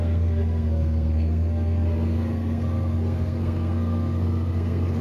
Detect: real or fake fake